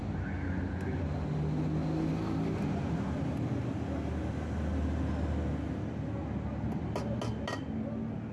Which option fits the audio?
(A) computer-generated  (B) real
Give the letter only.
B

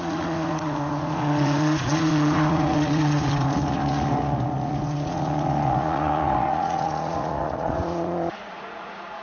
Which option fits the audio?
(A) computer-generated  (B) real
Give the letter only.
A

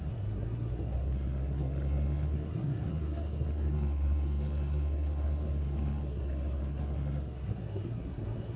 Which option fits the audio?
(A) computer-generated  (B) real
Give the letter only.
A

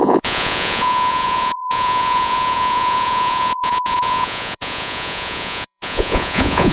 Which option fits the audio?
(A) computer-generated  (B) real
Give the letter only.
A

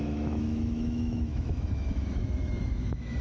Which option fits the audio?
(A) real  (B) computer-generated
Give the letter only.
B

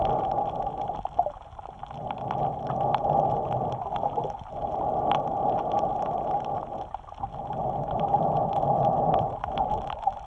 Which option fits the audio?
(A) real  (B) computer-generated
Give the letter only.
A